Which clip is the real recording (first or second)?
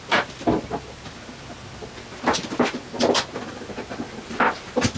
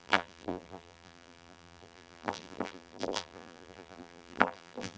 first